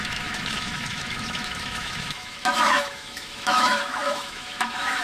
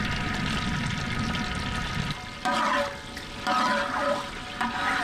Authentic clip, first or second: second